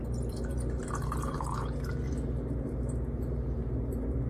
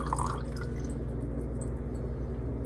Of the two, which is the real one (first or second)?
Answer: second